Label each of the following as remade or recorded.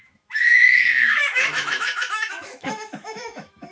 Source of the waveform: remade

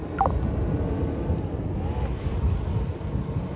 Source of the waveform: recorded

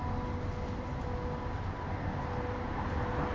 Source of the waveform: recorded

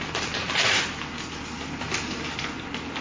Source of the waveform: recorded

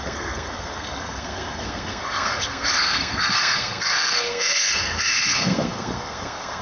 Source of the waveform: remade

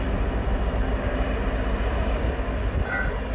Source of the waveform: recorded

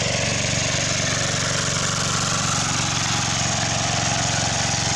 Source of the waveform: recorded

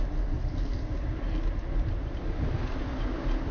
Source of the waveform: recorded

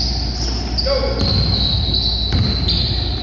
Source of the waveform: recorded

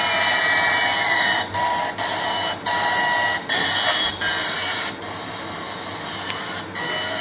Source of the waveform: recorded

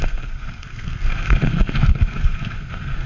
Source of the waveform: remade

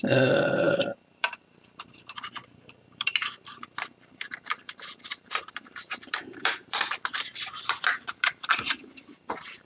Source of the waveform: remade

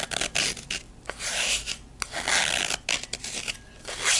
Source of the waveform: recorded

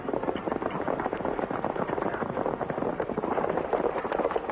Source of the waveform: remade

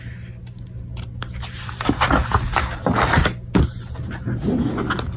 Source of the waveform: recorded